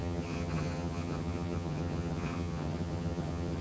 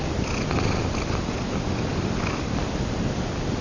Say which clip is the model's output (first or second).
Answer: first